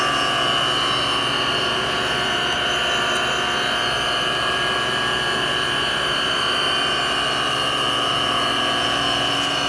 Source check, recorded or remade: recorded